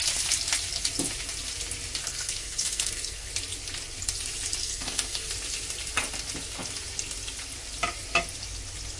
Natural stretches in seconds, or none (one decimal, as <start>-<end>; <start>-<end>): 0.0-2.1; 3.3-4.6; 5.3-9.0

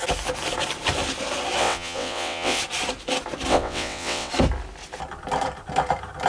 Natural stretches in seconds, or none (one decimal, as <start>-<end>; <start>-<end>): 0.0-1.6; 2.6-3.5; 4.3-6.3

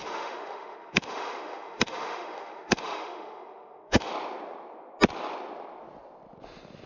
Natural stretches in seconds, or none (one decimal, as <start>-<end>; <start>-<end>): 4.1-6.9

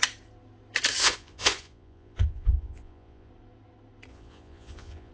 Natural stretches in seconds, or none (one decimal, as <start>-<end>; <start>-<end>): 0.0-1.0; 3.3-4.1

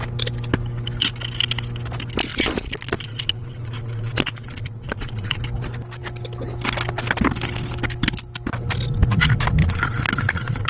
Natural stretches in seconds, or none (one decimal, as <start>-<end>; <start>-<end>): 0.0-2.3; 5.4-9.6

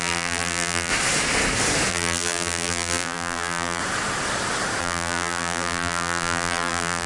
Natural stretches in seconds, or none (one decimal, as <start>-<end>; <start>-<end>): 0.9-1.9; 3.8-4.8

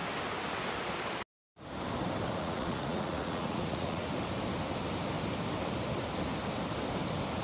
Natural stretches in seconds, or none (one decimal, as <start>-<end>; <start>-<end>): 0.0-2.4; 4.0-7.4

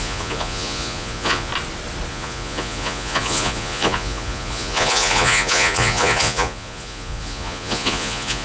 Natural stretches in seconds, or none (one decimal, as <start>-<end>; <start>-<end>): 1.5-2.1